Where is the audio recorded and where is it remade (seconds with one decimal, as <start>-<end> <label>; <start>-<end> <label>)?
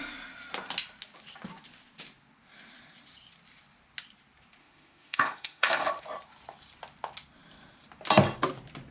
0.0-4.6 recorded; 4.6-6.0 remade; 6.0-8.9 recorded